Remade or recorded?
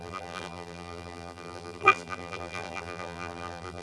remade